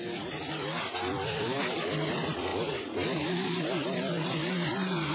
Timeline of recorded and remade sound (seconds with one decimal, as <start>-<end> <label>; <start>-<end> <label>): 0.0-5.1 recorded